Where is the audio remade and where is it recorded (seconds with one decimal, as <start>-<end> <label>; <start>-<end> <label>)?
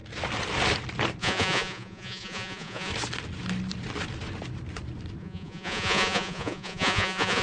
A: 0.0-1.2 recorded; 1.2-2.9 remade; 2.9-5.2 recorded; 5.2-7.4 remade